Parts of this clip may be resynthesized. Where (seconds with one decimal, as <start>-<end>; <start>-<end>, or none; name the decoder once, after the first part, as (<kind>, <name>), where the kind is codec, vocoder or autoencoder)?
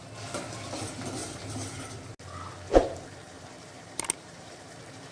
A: 1.2-2.2 (vocoder, BigVGAN v2); 2.8-5.1